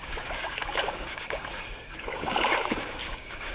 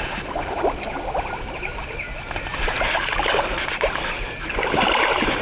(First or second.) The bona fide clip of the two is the second